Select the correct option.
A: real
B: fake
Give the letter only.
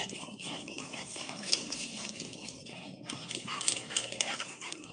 B